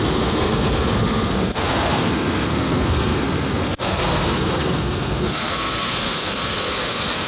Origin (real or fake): fake